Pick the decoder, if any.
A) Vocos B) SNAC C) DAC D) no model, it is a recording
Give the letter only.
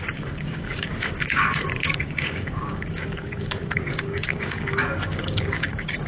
C